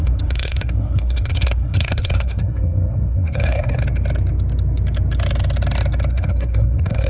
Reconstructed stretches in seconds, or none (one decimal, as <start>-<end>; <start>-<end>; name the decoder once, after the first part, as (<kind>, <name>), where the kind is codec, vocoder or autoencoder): 0.0-3.8 (codec, SNAC); 6.1-7.1